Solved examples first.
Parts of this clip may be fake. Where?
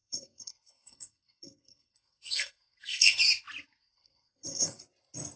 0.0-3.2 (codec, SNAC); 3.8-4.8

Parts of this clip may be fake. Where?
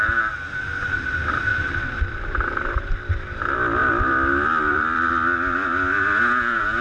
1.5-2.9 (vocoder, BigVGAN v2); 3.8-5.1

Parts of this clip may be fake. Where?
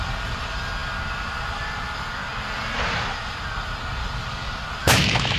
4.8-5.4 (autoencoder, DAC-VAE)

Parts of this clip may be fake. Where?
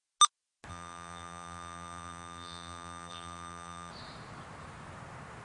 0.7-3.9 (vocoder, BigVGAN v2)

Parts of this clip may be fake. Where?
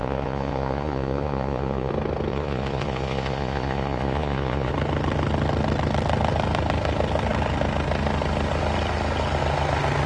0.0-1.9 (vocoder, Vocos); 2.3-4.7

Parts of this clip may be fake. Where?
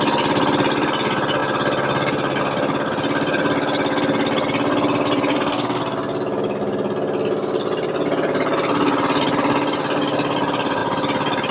5.3-5.8 (codec, SNAC)